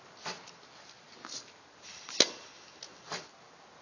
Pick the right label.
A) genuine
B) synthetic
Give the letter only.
A